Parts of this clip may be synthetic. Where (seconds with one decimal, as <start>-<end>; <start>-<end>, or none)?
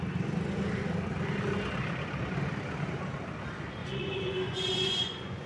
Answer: 3.8-5.5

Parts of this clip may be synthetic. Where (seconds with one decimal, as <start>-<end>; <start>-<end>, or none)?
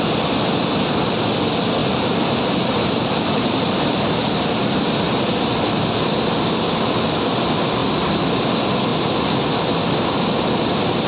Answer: 1.8-5.0; 8.9-9.4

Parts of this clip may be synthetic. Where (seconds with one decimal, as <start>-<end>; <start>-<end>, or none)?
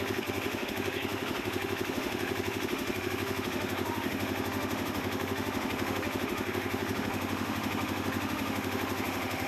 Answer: 0.0-9.5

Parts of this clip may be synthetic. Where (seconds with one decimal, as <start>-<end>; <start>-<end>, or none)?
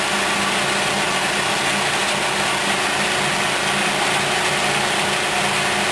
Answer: none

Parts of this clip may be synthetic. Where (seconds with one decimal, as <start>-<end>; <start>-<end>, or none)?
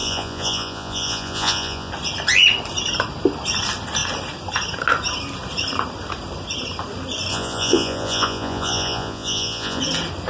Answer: 0.0-1.9; 7.3-9.8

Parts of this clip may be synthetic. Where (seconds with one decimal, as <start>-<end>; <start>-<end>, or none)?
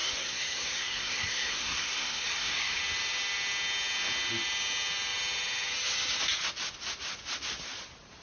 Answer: 0.0-2.8